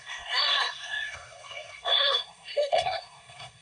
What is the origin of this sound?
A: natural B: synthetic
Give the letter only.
B